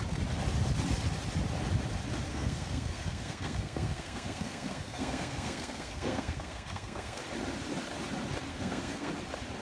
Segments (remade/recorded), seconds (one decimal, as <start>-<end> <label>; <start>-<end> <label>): 0.0-2.3 recorded; 2.3-7.2 remade; 7.2-8.5 recorded; 8.5-9.1 remade; 9.1-9.6 recorded